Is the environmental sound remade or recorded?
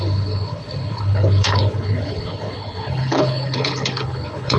remade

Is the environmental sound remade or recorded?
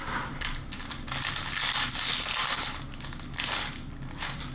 recorded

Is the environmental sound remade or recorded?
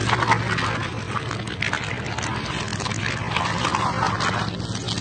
recorded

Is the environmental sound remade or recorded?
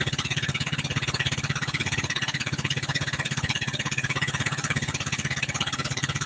remade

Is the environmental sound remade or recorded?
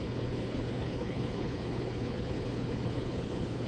remade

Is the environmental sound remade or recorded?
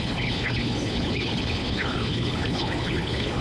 remade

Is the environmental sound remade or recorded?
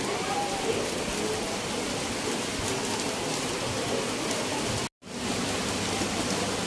recorded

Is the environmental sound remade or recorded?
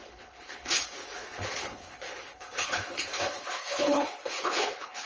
remade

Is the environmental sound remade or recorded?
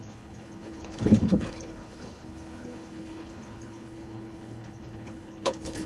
remade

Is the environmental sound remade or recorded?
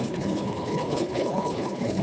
remade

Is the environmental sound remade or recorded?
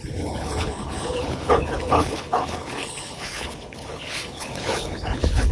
remade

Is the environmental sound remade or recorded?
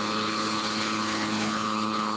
remade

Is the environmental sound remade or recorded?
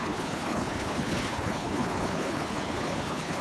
remade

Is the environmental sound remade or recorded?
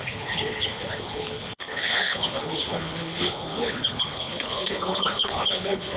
remade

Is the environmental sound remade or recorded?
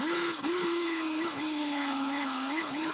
remade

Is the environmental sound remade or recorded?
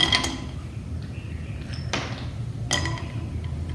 recorded